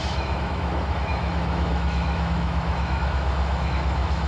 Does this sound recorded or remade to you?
remade